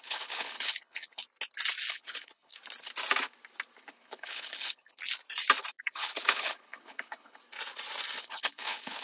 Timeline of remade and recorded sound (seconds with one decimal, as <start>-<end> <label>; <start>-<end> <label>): 0.0-1.2 remade; 1.2-1.9 recorded; 1.9-2.5 remade; 2.5-3.8 recorded; 3.8-4.9 remade; 4.9-5.8 recorded; 5.8-7.4 remade; 7.4-8.2 recorded; 8.2-9.0 remade